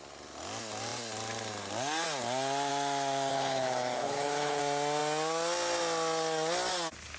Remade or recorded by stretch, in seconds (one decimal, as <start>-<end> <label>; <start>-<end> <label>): 0.0-3.3 recorded; 3.3-4.6 remade; 4.6-7.2 recorded